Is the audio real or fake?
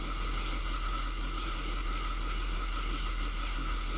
fake